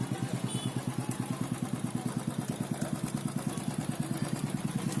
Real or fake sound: real